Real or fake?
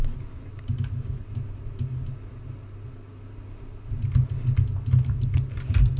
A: real